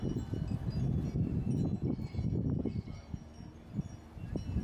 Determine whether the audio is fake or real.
real